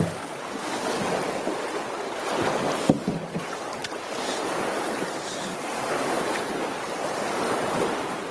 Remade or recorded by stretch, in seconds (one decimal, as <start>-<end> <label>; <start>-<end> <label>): 0.0-3.8 recorded; 3.8-5.3 remade; 5.3-8.3 recorded